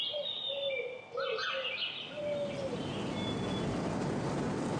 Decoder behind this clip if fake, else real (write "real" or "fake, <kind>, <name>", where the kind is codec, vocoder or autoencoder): real